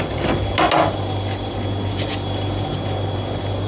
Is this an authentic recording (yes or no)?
yes